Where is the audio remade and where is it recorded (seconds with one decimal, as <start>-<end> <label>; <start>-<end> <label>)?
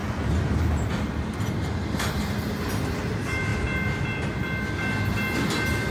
0.0-5.9 recorded